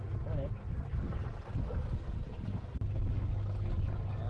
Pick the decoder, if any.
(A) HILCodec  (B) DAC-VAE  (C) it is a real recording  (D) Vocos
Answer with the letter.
C